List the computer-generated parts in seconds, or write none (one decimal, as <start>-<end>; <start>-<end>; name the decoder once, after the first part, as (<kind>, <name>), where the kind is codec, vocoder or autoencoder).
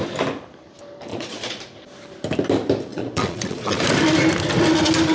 1.1-1.6 (vocoder, Vocos); 2.9-3.8